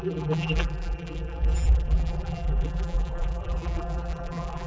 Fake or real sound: fake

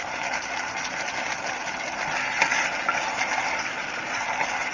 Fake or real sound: real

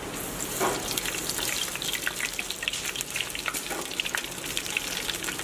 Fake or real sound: real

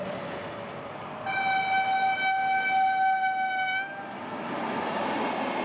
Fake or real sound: real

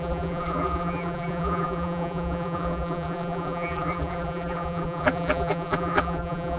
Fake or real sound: fake